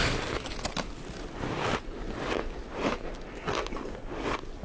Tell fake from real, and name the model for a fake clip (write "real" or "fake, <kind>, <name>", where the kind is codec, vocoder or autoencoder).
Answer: real